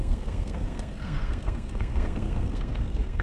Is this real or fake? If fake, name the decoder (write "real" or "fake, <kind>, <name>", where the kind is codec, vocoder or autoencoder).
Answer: fake, codec, SNAC